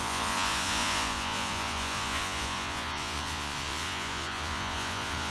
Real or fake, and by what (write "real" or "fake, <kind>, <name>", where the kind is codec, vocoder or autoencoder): fake, vocoder, Vocos